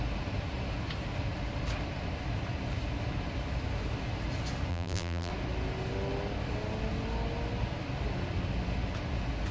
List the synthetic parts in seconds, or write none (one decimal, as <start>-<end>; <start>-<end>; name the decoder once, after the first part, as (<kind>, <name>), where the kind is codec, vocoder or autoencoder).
4.7-5.3 (vocoder, BigVGAN v2)